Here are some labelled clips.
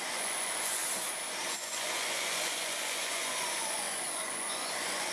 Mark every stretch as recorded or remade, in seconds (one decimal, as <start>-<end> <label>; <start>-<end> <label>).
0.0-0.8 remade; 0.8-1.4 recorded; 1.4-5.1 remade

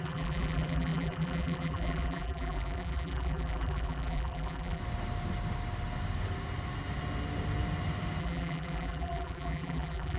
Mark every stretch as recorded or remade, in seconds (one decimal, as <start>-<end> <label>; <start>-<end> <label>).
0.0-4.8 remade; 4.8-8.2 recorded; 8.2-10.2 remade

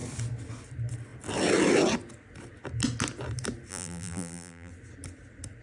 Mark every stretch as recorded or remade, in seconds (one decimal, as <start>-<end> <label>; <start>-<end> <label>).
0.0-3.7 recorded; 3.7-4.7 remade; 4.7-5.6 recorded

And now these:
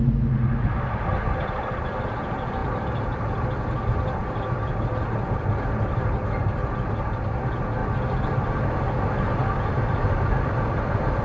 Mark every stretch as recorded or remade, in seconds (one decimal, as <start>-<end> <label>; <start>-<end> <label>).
0.0-11.2 recorded